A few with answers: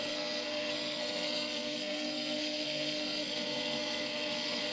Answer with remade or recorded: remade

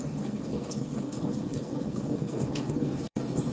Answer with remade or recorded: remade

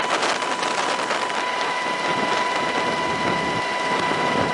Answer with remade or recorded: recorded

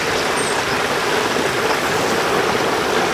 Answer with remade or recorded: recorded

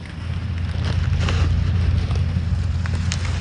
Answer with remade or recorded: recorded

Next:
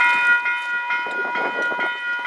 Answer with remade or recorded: recorded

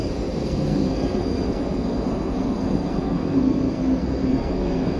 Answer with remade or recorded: remade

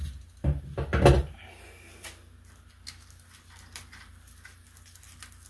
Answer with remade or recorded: recorded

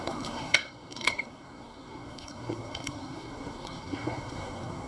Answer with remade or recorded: remade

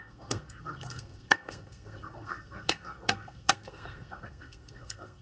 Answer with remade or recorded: remade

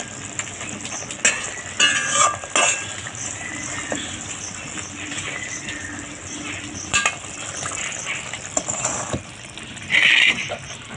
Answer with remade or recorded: recorded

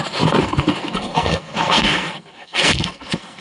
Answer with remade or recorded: remade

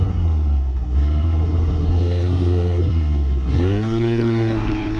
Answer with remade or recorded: remade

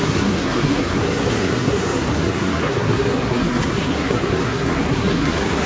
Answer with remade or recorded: remade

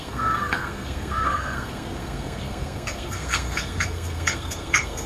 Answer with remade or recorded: remade